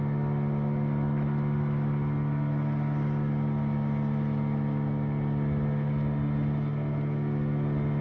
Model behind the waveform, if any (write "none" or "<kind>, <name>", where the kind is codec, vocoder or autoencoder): none